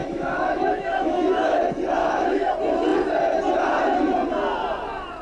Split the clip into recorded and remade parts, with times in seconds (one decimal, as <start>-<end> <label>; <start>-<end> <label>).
0.0-1.6 remade; 1.6-2.0 recorded; 2.0-2.5 remade; 2.5-5.2 recorded